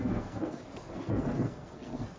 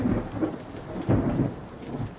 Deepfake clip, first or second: first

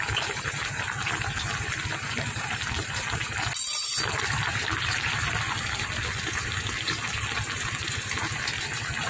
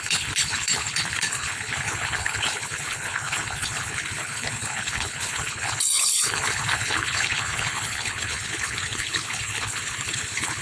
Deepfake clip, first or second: second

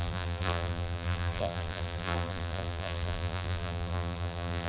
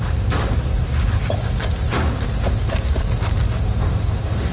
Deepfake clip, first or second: first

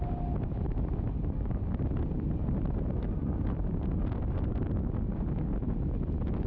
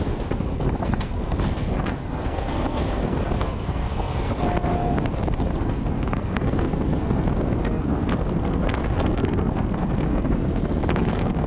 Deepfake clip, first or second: second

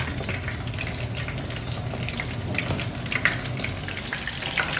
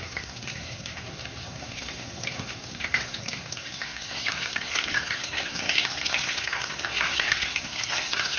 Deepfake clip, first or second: second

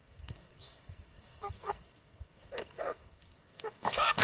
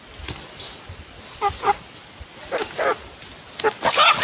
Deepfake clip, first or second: first